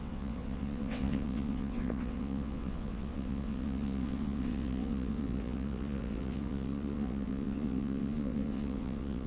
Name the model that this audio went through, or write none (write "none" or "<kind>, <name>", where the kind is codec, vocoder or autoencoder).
vocoder, WaveNeXt